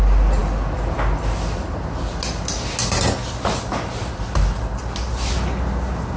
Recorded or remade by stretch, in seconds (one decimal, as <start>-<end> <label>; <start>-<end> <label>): 0.0-6.2 recorded